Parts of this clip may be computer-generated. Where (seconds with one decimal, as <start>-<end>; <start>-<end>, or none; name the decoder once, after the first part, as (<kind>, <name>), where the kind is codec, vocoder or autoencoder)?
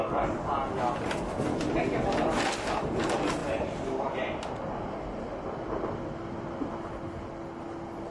none